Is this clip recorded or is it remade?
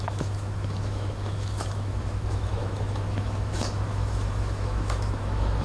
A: remade